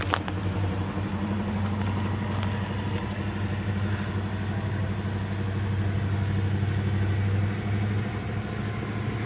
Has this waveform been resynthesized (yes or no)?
no